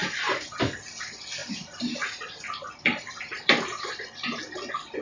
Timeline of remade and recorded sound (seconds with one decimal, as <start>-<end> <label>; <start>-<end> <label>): 0.0-1.4 recorded; 1.4-4.4 remade; 4.4-5.0 recorded